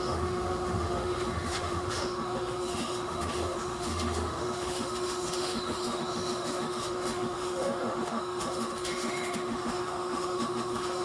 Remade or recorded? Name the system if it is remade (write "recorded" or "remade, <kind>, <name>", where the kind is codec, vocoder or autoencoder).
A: remade, autoencoder, DAC-VAE